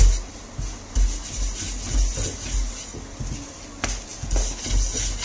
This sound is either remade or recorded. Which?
recorded